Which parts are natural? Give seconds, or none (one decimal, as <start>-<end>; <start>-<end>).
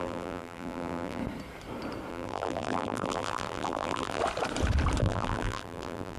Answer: 1.2-2.1; 4.2-5.0